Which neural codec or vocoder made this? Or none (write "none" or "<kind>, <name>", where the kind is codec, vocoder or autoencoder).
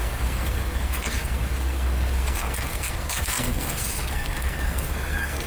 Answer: codec, SNAC